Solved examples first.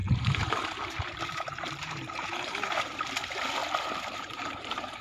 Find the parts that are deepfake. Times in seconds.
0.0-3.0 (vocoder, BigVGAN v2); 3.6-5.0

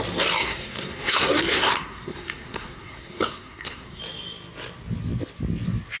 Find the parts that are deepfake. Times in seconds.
0.4-4.0 (codec, SNAC)

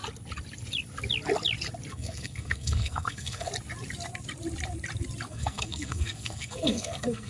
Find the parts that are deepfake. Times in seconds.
1.9-3.5 (codec, SNAC); 5.3-7.3

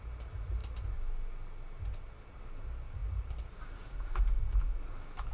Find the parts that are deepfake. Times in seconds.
none

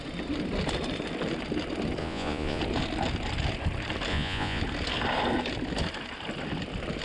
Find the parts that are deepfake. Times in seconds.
2.0-2.6 (vocoder, Vocos); 4.1-4.6

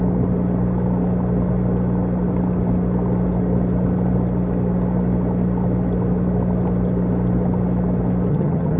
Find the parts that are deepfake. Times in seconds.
8.3-8.8 (vocoder, HiFi-GAN)